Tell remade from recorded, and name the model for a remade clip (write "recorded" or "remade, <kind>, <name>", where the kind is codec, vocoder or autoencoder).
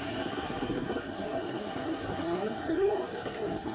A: remade, codec, SNAC